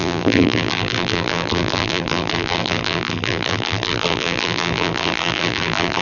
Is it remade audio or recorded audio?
remade